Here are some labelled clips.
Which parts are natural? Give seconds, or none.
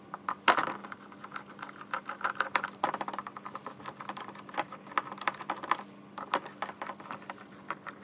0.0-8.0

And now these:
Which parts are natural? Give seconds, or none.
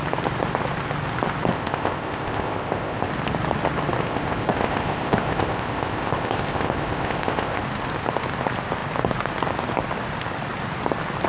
0.0-1.5; 3.1-4.0; 7.6-11.3